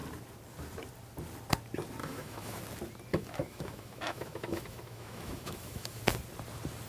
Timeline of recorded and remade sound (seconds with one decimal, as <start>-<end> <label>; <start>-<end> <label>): 0.0-2.0 recorded; 2.0-2.6 remade; 2.6-3.1 recorded; 3.1-6.0 remade; 6.0-6.9 recorded